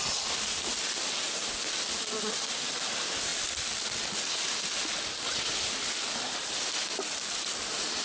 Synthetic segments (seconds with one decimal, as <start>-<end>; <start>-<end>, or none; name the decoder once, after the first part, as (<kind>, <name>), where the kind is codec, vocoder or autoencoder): none